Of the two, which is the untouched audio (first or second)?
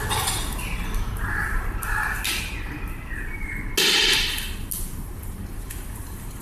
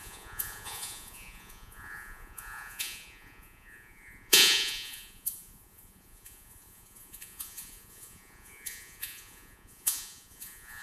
first